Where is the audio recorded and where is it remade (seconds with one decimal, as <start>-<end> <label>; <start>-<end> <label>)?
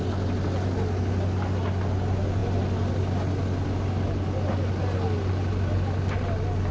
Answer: 0.0-6.7 recorded